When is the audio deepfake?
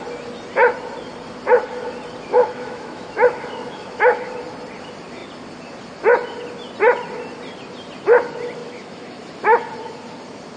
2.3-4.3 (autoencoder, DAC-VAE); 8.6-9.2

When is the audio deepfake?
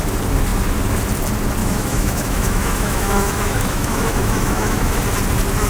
1.6-5.0 (autoencoder, DAC-VAE)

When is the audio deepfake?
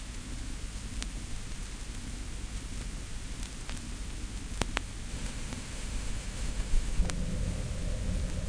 5.1-7.0 (autoencoder, DAC-VAE)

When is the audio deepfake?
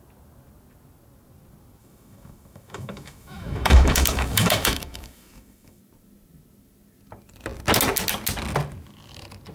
1.8-5.8 (autoencoder, DAC-VAE)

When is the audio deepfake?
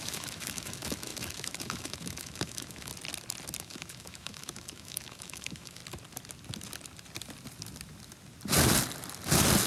0.0-2.9 (autoencoder, DAC-VAE); 3.6-5.8